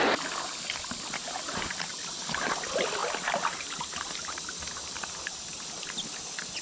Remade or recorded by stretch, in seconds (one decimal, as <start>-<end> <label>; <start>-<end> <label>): 0.0-3.0 recorded; 3.0-4.1 remade; 4.1-6.6 recorded